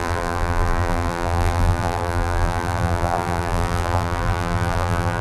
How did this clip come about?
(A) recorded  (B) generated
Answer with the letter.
B